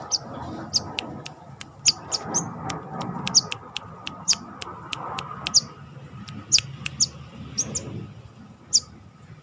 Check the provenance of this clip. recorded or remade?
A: recorded